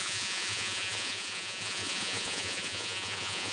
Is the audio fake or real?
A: fake